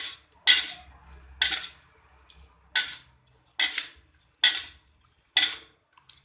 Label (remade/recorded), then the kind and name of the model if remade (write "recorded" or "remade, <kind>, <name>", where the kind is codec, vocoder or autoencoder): recorded